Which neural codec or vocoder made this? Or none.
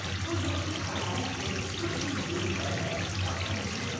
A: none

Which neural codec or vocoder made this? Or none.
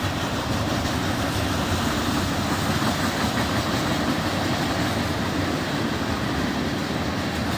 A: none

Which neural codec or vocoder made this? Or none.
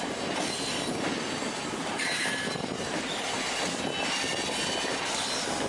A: none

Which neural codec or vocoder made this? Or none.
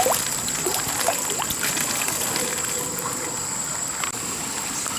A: none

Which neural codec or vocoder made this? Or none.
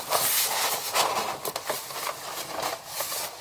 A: none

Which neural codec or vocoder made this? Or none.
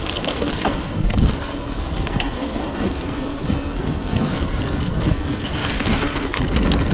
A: codec, SNAC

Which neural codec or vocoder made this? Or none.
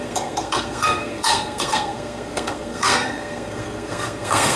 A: codec, SNAC